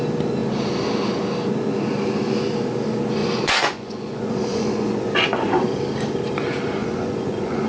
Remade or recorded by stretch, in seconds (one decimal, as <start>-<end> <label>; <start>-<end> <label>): 0.0-3.2 recorded; 3.2-5.6 remade; 5.6-6.8 recorded; 6.8-7.7 remade